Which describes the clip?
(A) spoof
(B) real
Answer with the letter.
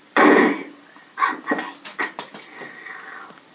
B